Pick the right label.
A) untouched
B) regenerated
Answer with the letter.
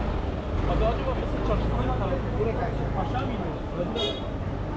A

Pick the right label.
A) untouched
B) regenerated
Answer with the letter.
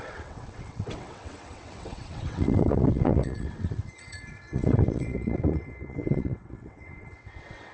B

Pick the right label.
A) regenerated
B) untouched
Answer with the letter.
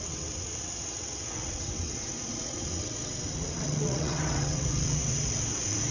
A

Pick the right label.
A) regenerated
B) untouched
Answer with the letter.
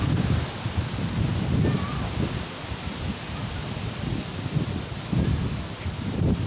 B